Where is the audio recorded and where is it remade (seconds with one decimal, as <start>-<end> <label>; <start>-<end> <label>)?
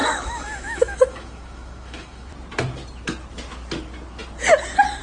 0.0-2.3 remade; 2.3-5.0 recorded